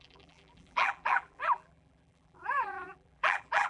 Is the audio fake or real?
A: fake